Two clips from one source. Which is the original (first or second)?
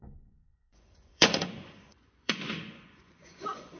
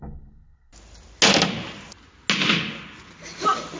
second